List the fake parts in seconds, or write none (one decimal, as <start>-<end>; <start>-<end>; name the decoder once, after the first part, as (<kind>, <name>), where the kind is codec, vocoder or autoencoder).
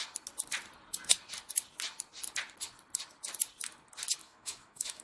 4.2-5.0 (autoencoder, DAC-VAE)